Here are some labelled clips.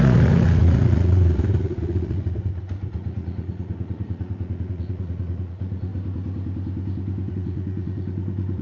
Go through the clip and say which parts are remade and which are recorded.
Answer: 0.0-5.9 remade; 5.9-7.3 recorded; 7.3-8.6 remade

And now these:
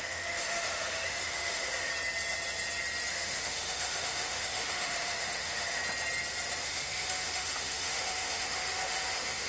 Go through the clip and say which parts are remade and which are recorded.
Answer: 0.0-1.9 remade; 1.9-3.1 recorded; 3.1-5.8 remade; 5.8-6.6 recorded; 6.6-9.5 remade

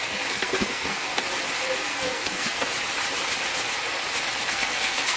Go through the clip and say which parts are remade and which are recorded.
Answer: 0.0-1.1 remade; 1.1-1.9 recorded; 1.9-2.7 remade; 2.7-4.5 recorded; 4.5-5.2 remade

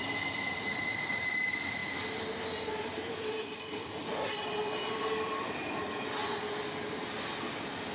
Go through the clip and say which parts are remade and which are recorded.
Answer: 0.0-1.8 remade; 1.8-2.7 recorded; 2.7-6.2 remade; 6.2-7.9 recorded